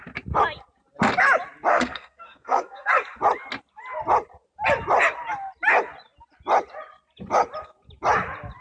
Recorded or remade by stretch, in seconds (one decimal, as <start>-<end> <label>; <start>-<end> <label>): 0.0-1.7 recorded; 1.7-2.9 remade; 2.9-8.6 recorded